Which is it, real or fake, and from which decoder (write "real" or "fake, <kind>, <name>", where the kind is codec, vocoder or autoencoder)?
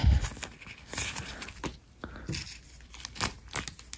real